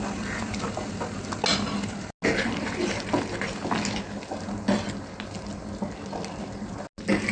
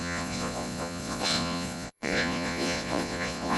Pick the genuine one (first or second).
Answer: first